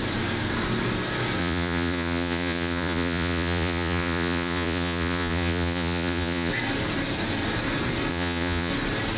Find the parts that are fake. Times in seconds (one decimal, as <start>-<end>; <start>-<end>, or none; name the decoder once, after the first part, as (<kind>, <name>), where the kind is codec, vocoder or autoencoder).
1.4-6.5 (vocoder, Vocos); 8.1-8.7